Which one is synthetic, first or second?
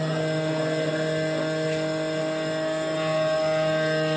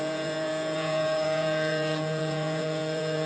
second